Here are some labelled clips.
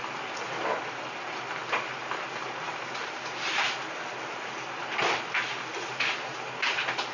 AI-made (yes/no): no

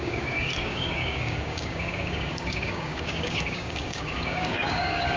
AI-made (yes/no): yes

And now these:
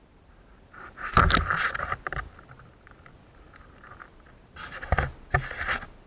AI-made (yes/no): no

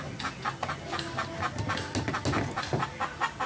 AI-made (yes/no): no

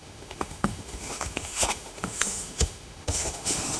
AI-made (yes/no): yes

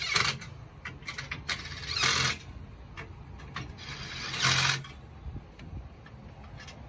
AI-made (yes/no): no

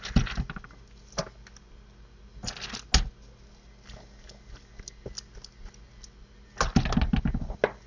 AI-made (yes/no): no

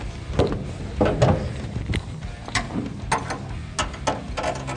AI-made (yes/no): no